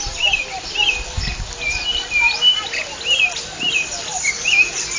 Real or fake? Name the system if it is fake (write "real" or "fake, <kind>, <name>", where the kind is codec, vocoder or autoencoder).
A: real